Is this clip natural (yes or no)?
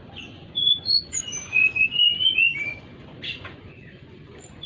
no